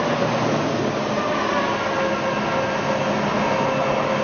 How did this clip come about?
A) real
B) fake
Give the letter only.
A